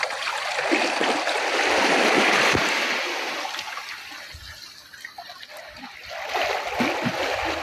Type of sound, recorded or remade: recorded